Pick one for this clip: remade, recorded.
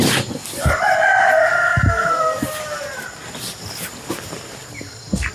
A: recorded